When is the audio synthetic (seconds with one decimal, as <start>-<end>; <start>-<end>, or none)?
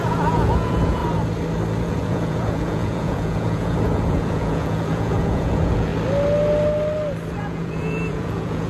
0.0-1.0; 1.8-5.9; 7.3-8.7